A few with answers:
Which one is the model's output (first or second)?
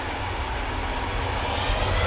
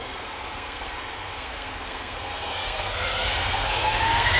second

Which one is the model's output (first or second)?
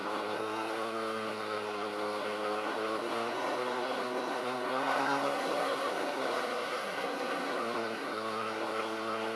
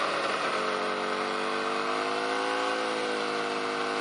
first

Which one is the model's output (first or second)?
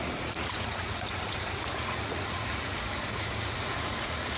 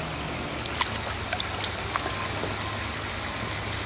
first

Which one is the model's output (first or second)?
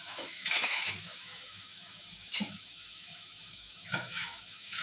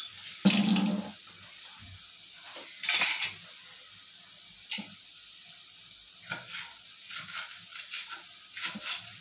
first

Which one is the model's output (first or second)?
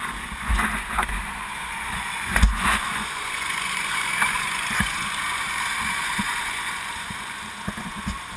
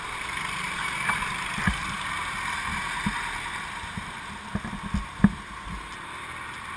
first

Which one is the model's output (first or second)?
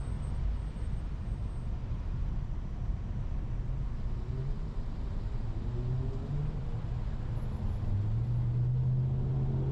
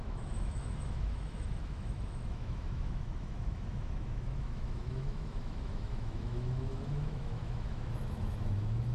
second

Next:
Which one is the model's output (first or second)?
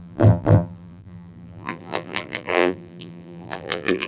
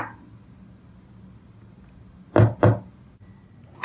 first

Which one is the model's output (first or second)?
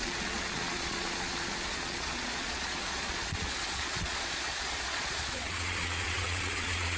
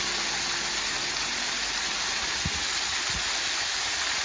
first